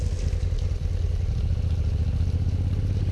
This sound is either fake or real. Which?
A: real